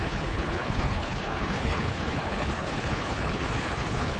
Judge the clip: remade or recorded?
remade